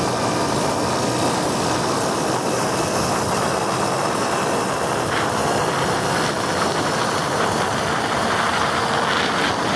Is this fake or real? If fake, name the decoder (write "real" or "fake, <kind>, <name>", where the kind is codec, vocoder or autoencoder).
real